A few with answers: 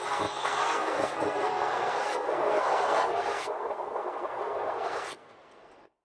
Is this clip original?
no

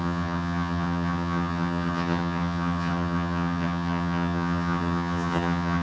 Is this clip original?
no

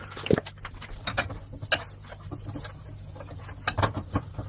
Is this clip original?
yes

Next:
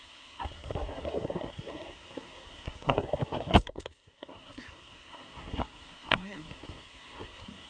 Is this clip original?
no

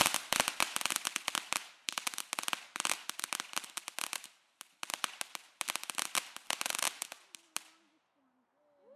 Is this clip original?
yes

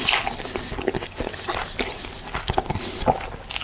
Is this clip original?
yes